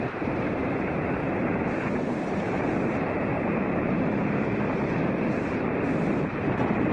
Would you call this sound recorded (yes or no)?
no